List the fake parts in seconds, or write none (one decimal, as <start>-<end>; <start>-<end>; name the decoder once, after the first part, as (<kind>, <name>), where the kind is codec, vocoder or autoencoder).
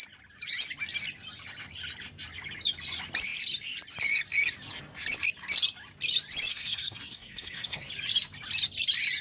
6.5-7.9 (codec, SNAC)